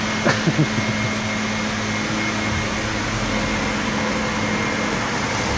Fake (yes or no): no